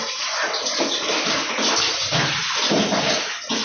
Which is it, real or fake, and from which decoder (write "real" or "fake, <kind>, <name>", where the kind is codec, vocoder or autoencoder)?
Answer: real